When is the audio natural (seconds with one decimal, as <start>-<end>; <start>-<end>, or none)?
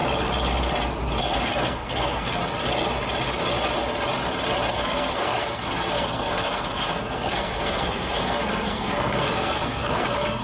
0.0-1.2; 2.4-4.7